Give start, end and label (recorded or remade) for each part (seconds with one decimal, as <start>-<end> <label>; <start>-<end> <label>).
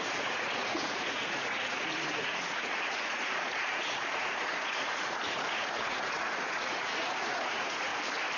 0.0-7.9 remade; 7.9-8.4 recorded